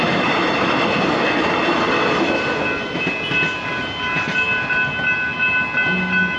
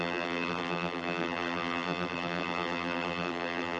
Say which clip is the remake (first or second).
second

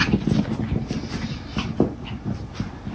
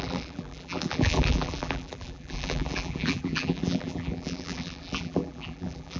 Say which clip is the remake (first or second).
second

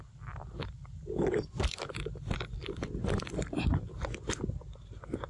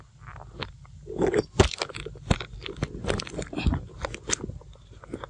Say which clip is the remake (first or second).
first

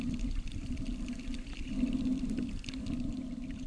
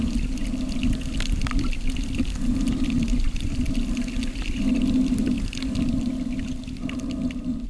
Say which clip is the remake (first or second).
first